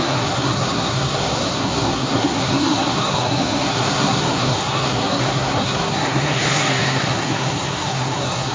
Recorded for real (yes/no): no